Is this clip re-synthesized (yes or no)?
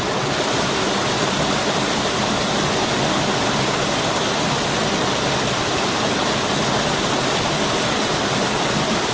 no